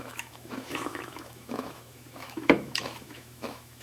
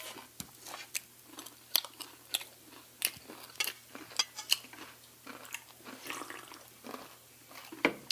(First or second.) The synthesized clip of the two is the first